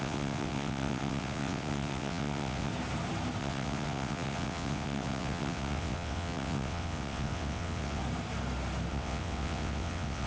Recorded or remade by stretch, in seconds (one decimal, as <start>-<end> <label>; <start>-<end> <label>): 0.0-2.7 remade; 2.7-3.4 recorded; 3.4-8.0 remade; 8.0-8.9 recorded; 8.9-10.3 remade